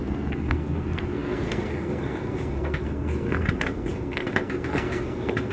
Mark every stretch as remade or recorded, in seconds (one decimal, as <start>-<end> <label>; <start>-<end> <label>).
0.0-5.5 remade